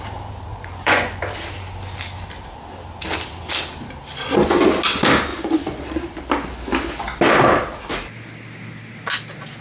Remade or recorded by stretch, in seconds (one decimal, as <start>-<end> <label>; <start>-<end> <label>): 0.0-0.5 recorded; 0.5-1.2 remade; 1.2-5.3 recorded; 5.3-5.8 remade; 5.8-9.6 recorded